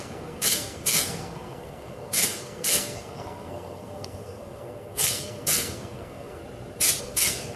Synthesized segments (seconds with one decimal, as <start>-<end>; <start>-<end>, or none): 0.0-6.4; 7.0-7.6